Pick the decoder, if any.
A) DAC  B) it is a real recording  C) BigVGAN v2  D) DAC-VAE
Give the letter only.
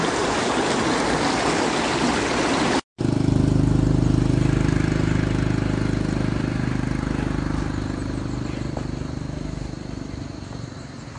B